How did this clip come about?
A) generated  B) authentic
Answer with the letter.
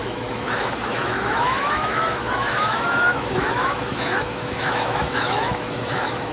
A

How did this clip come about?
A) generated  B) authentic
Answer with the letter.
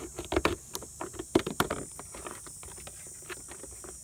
B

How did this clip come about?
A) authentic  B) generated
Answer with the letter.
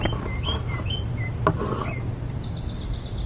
A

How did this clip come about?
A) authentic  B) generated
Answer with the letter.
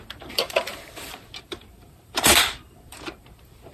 B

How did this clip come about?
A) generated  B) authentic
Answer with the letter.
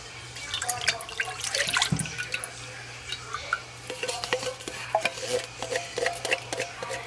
B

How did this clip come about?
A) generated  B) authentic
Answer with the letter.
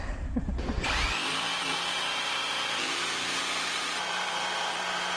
A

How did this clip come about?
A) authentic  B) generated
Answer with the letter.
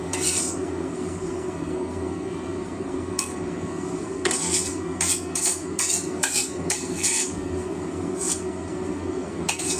B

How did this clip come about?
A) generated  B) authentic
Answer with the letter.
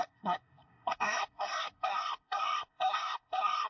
A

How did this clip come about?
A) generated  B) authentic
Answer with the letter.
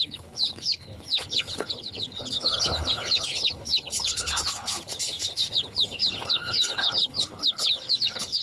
A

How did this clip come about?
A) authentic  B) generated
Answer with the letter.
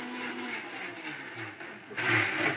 A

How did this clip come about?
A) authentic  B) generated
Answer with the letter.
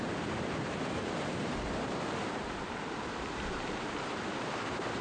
B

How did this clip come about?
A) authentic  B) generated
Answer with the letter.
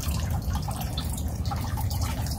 B